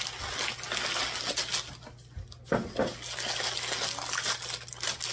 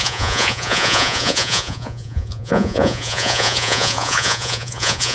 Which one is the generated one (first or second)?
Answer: second